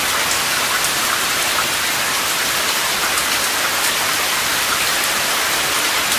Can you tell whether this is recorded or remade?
recorded